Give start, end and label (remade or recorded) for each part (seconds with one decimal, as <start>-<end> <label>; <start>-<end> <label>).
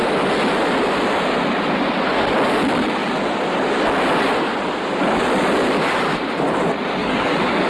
0.0-7.0 recorded; 7.0-7.7 remade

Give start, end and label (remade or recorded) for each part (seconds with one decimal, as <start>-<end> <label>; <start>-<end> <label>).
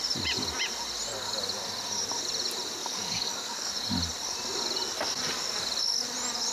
0.0-2.8 recorded; 2.8-3.7 remade; 3.7-6.5 recorded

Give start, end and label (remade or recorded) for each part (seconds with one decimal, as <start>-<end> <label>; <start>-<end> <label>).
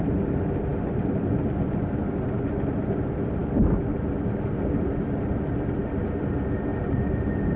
0.0-7.6 recorded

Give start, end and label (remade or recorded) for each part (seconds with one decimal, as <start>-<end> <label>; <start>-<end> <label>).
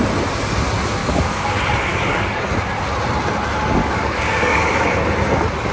0.0-1.0 recorded; 1.0-1.5 remade; 1.5-1.9 recorded; 1.9-2.5 remade; 2.5-3.8 recorded; 3.8-4.7 remade; 4.7-5.7 recorded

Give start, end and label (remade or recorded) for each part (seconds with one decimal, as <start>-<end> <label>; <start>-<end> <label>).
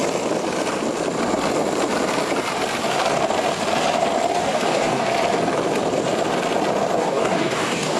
0.0-4.3 recorded; 4.3-5.1 remade; 5.1-7.0 recorded; 7.0-8.0 remade